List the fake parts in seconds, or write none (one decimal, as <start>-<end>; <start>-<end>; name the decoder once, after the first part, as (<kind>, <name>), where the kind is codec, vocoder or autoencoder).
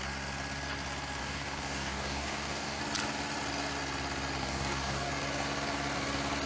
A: 1.2-2.8 (codec, DAC); 4.4-5.1